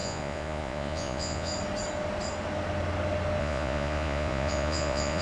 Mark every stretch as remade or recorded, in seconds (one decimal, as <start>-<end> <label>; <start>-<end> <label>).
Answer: 0.0-1.5 remade; 1.5-3.4 recorded; 3.4-5.2 remade